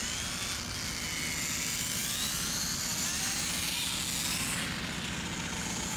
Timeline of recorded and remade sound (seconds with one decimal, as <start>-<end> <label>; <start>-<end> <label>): 0.0-6.0 recorded